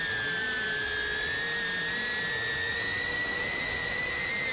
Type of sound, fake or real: real